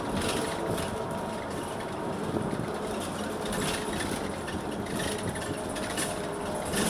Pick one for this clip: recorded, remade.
recorded